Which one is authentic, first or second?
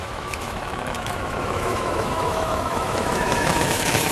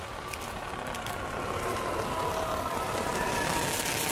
second